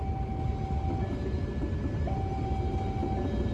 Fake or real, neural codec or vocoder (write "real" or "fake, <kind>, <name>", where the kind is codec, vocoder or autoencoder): real